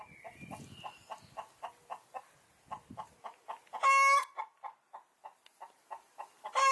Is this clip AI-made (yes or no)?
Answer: no